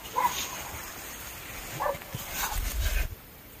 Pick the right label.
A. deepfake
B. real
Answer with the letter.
B